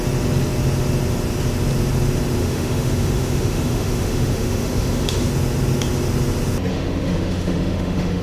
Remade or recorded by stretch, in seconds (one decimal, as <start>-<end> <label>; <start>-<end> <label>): 0.0-2.4 recorded; 2.4-5.3 remade; 5.3-6.7 recorded; 6.7-8.2 remade